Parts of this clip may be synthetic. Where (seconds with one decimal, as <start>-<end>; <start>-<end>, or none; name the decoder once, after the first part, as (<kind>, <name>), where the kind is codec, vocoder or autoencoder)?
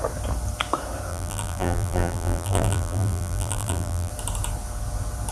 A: 1.1-4.1 (vocoder, BigVGAN v2)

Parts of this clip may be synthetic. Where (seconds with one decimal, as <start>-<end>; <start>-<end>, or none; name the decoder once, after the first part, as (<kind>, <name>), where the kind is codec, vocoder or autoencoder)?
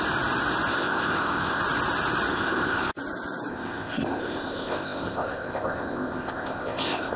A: 0.7-1.6 (codec, ZipCodec); 2.3-2.9; 3.5-7.2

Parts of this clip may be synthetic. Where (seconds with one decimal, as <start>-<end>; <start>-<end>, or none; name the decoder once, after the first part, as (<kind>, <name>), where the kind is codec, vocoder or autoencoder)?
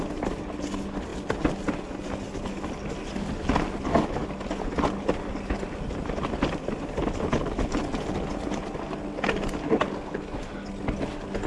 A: none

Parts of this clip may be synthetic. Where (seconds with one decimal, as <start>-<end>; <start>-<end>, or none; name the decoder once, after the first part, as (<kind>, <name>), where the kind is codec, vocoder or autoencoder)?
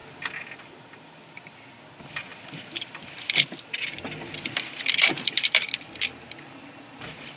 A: 0.6-7.4 (vocoder, BigVGAN v2)